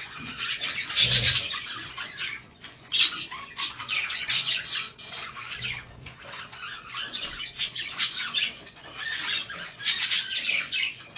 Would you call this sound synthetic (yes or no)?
yes